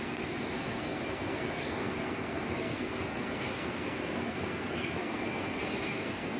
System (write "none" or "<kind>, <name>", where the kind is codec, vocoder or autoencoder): codec, SNAC